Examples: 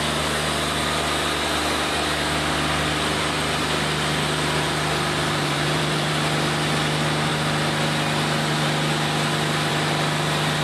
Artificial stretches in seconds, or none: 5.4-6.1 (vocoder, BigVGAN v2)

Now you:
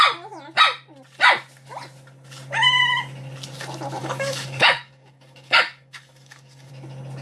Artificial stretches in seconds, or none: 4.0-6.7 (codec, DAC)

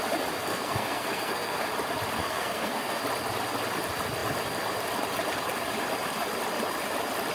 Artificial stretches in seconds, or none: 0.4-1.6 (codec, SNAC); 2.2-3.0

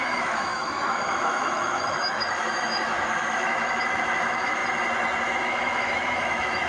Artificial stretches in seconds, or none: 0.0-4.6 (autoencoder, DAC-VAE); 5.4-6.7

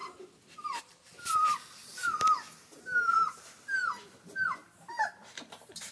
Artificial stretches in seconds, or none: 2.6-3.7 (vocoder, BigVGAN v2); 4.6-5.9

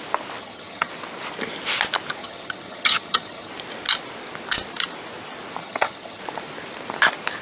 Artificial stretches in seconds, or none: 0.4-0.9 (vocoder, HiFi-GAN); 2.2-3.5; 5.6-6.2